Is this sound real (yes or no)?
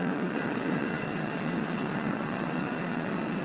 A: no